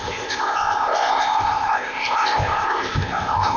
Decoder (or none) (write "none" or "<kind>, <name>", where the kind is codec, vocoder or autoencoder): codec, ZipCodec